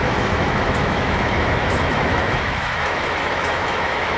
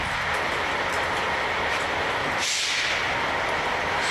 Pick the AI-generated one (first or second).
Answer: first